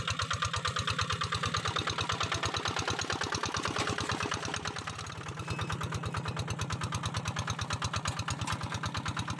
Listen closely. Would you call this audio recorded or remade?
recorded